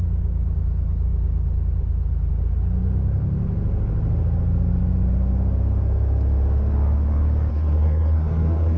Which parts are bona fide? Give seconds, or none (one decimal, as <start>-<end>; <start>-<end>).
0.0-7.5